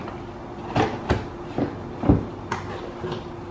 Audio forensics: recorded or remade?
recorded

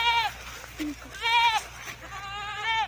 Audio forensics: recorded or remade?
recorded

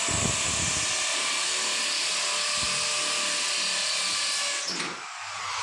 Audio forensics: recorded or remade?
recorded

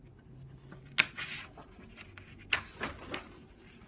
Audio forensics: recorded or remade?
recorded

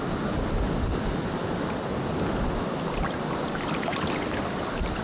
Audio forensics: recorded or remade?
recorded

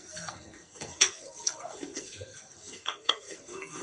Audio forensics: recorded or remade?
remade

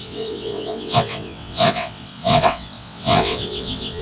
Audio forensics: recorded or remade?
remade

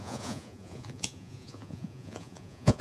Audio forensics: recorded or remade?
remade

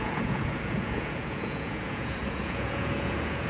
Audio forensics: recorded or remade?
remade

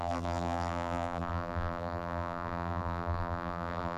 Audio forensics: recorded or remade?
remade